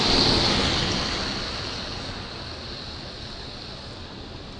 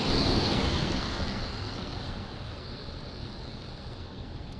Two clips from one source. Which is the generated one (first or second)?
second